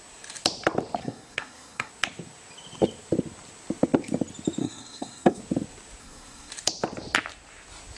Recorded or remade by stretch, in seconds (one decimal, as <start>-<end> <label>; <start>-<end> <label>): 0.0-1.0 recorded; 1.0-1.9 remade; 1.9-4.6 recorded; 4.6-5.4 remade; 5.4-6.0 recorded; 6.0-6.5 remade; 6.5-8.0 recorded